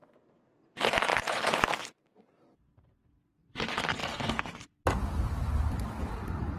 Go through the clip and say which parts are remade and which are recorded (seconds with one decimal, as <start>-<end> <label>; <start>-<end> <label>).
0.0-6.6 recorded